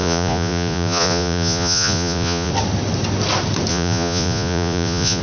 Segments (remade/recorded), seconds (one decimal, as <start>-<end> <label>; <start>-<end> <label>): 0.0-2.5 remade; 2.5-3.7 recorded; 3.7-5.2 remade